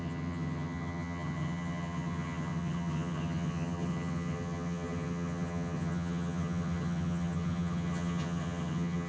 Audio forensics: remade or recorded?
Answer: remade